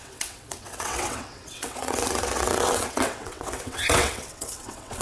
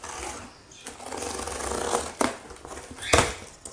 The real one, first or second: second